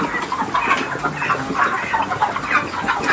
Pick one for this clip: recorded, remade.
recorded